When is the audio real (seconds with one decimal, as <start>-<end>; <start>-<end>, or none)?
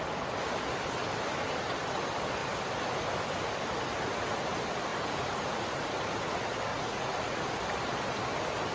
0.0-4.9; 5.9-6.7; 7.6-8.7